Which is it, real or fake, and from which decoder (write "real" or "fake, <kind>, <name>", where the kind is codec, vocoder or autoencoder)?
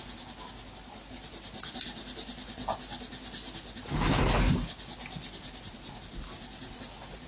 real